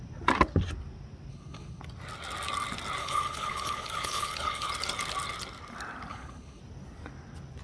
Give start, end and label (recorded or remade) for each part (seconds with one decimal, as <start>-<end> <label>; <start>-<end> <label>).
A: 0.0-1.3 recorded; 1.3-1.8 remade; 1.8-3.0 recorded; 3.0-4.7 remade; 4.7-6.1 recorded; 6.1-6.6 remade; 6.6-7.6 recorded